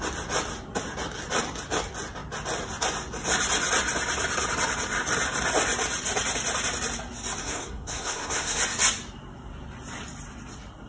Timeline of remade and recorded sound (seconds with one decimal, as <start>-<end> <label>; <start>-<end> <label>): 0.0-7.4 recorded; 7.4-8.6 remade; 8.6-10.9 recorded